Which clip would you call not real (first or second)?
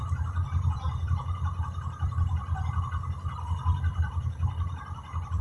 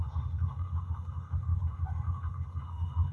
second